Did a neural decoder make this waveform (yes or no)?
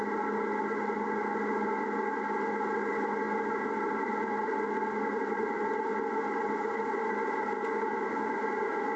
no